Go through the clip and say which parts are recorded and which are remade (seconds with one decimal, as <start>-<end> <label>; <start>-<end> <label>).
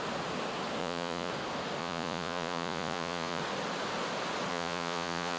0.0-0.8 recorded; 0.8-1.3 remade; 1.3-1.8 recorded; 1.8-3.4 remade; 3.4-4.5 recorded; 4.5-5.4 remade